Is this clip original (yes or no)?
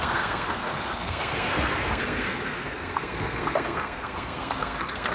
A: no